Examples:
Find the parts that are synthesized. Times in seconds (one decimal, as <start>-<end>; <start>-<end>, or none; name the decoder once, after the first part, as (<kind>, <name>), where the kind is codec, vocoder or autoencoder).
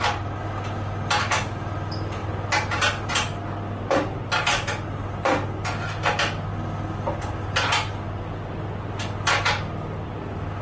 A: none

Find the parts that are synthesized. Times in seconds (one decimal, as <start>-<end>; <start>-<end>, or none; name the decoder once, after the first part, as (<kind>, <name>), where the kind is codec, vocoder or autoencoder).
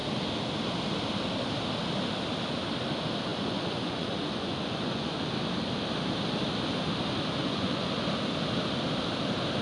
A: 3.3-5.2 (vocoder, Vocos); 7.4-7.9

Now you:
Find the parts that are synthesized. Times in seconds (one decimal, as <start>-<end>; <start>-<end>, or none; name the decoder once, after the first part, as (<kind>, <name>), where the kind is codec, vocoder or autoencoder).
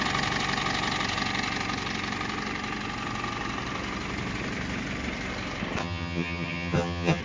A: 5.8-7.2 (vocoder, HiFi-GAN)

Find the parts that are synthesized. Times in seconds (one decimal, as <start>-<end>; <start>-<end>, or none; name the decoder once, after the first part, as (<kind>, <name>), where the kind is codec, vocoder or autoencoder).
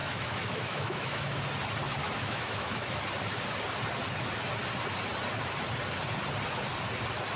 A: 0.0-1.4 (autoencoder, DAC-VAE); 2.0-3.0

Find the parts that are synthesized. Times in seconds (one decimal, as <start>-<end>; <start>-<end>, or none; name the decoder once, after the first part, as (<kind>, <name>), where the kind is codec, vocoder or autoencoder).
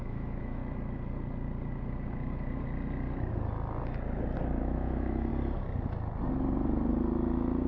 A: 0.0-0.6 (autoencoder, DAC-VAE); 4.6-5.3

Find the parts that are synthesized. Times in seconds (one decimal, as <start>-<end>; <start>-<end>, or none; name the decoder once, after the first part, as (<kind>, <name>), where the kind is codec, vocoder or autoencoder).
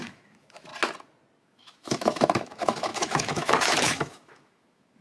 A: 0.0-0.7 (autoencoder, DAC-VAE); 1.4-5.0